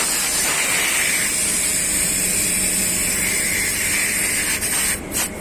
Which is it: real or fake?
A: real